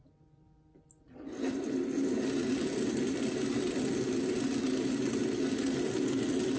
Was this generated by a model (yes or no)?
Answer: no